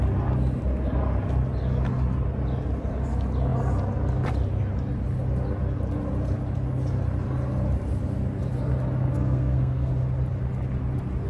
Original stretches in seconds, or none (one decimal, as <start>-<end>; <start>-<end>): 0.0-9.1; 9.9-11.3